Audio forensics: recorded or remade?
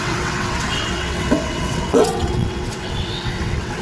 remade